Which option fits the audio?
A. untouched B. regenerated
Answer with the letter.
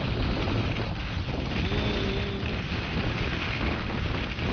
A